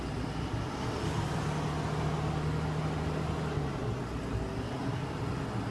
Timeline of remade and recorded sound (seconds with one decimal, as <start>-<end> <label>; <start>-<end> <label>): 0.0-5.7 recorded